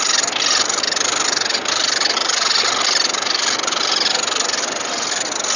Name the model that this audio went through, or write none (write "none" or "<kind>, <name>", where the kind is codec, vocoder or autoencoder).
none